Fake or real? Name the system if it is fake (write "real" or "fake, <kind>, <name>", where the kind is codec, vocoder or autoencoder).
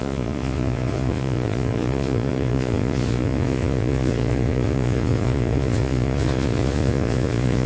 fake, vocoder, Vocos